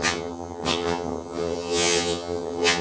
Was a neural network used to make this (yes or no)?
yes